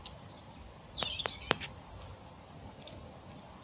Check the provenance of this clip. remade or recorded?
recorded